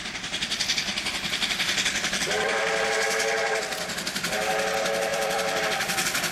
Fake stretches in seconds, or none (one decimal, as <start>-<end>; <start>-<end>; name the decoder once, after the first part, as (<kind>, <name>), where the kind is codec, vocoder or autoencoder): 0.9-3.6 (vocoder, BigVGAN v2); 5.1-5.6